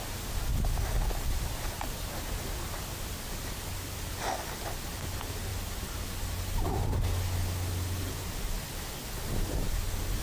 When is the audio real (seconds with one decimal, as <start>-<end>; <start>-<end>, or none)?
0.0-10.2